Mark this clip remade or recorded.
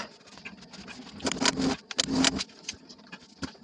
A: recorded